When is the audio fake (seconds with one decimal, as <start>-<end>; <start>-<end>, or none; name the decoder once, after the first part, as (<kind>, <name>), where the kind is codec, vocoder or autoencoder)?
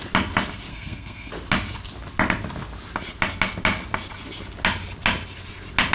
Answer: 0.7-1.3 (codec, SNAC)